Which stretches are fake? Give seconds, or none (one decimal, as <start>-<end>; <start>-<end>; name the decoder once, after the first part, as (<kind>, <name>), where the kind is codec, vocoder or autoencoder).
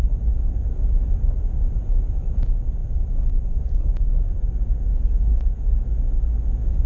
none